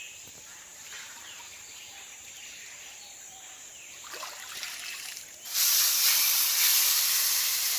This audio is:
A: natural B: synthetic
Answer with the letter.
B